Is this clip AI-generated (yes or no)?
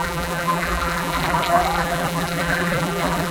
yes